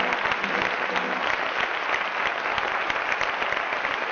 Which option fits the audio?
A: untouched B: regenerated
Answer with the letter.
A